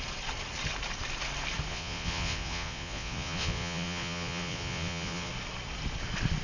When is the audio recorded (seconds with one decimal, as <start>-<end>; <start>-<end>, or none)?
0.0-1.7; 5.3-6.4